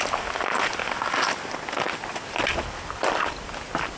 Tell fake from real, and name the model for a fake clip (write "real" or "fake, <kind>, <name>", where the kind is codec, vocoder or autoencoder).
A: real